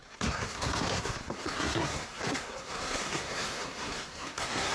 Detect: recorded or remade remade